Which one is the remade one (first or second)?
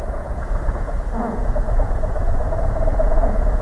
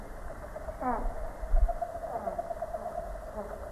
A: first